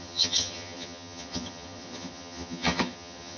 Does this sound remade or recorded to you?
remade